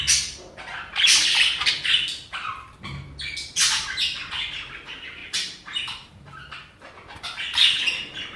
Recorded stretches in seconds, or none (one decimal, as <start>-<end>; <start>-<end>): 0.0-8.4